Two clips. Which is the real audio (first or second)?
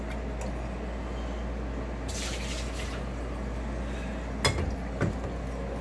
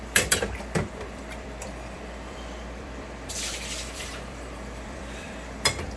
first